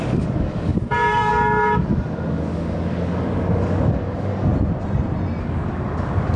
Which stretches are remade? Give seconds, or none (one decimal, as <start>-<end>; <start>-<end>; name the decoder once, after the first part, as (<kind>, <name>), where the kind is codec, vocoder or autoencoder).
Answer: 0.0-4.5 (codec, DAC); 5.4-6.4